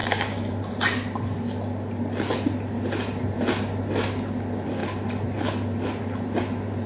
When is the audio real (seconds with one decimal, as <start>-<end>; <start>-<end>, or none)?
0.7-6.9